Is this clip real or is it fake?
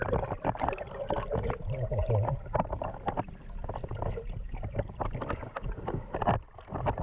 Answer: real